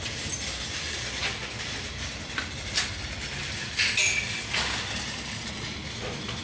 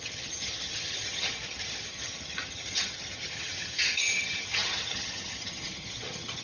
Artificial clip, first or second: second